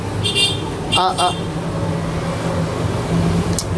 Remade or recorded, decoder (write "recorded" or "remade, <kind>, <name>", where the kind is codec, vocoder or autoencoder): recorded